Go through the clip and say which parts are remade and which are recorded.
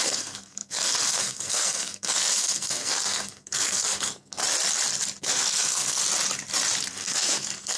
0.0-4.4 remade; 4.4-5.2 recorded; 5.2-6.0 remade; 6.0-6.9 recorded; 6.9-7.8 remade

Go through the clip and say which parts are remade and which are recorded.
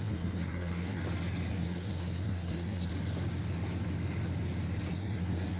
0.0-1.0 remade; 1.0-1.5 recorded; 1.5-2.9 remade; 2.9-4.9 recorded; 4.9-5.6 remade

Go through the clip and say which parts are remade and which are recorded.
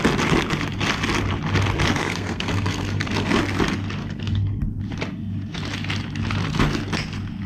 0.0-2.0 recorded; 2.0-3.4 remade; 3.4-4.0 recorded; 4.0-4.6 remade; 4.6-7.5 recorded